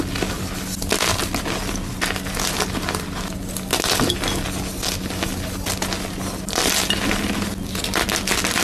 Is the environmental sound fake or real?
real